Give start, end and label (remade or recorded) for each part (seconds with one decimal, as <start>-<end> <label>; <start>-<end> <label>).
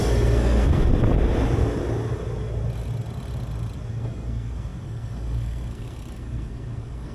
0.0-0.9 remade; 0.9-3.9 recorded; 3.9-7.1 remade